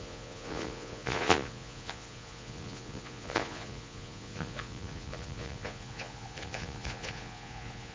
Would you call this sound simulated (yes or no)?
yes